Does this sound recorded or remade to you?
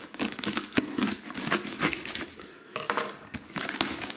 remade